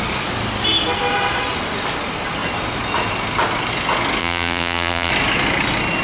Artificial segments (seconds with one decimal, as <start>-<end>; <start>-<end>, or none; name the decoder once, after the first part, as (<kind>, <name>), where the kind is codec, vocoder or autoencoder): 4.2-5.1 (vocoder, BigVGAN v2)